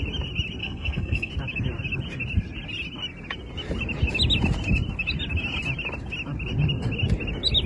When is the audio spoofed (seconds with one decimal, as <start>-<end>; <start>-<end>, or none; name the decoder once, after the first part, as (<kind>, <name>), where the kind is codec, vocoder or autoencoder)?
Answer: 0.6-1.3 (codec, SNAC)